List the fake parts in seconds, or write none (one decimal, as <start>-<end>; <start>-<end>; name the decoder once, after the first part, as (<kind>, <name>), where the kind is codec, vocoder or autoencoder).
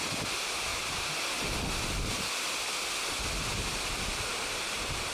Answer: none